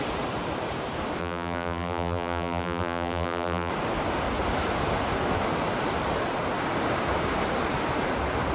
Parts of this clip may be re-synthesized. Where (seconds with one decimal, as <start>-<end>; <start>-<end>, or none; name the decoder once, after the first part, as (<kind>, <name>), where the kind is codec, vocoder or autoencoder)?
1.2-3.7 (vocoder, BigVGAN v2)